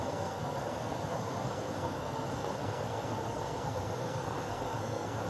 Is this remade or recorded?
remade